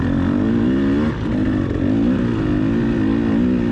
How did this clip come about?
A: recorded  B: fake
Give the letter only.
A